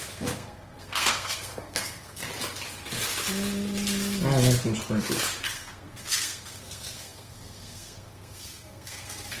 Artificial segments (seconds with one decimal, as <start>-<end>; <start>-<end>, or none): 0.0-2.2; 5.4-9.4